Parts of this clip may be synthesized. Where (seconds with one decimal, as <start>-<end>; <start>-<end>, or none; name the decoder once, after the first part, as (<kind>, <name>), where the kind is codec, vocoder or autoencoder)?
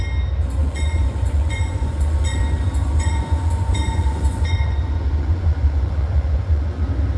0.6-2.4 (vocoder, Vocos); 2.8-6.8